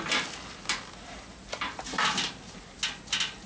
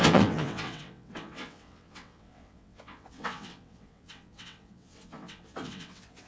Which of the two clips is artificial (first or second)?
second